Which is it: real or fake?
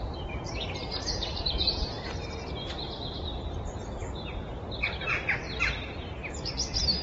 real